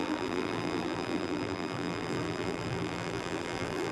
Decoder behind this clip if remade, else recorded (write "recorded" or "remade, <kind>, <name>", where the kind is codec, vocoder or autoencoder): remade, vocoder, BigVGAN v2